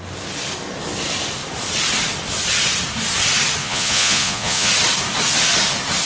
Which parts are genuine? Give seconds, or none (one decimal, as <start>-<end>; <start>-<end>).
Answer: 0.0-3.6; 4.7-6.1